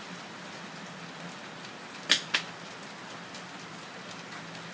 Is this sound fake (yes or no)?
yes